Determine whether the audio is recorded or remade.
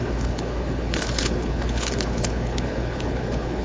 remade